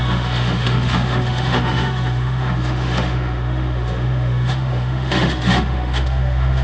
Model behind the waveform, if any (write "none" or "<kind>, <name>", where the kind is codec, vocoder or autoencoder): autoencoder, DAC-VAE